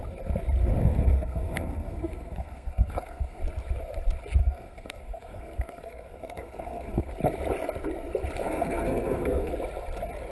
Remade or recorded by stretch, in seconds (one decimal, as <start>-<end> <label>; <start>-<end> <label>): 0.0-0.8 recorded; 0.8-3.4 remade; 3.4-4.4 recorded; 4.4-7.1 remade; 7.1-8.4 recorded; 8.4-9.5 remade; 9.5-10.3 recorded